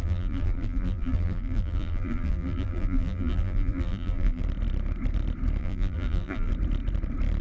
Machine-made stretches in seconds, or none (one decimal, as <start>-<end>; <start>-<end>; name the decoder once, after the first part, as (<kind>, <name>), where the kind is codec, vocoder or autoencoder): 0.0-4.4 (vocoder, BigVGAN v2); 5.6-6.5